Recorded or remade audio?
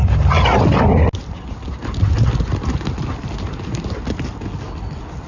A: recorded